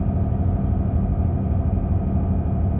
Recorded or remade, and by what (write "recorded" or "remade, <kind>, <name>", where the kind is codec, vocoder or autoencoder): recorded